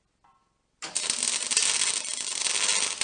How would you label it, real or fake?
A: real